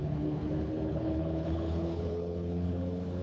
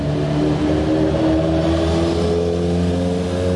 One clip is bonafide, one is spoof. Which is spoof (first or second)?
first